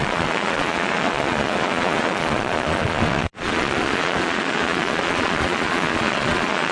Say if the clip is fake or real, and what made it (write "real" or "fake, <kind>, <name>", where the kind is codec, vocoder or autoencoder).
fake, vocoder, Vocos